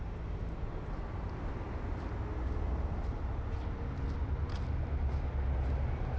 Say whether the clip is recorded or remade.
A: recorded